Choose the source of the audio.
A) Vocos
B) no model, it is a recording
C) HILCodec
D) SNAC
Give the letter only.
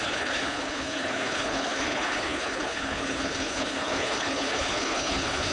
C